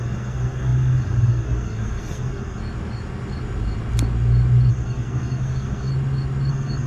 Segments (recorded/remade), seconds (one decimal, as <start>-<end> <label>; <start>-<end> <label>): 0.0-2.6 remade; 2.6-4.7 recorded; 4.7-5.9 remade; 5.9-6.5 recorded; 6.5-6.9 remade